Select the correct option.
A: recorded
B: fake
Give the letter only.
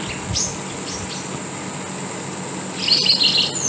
A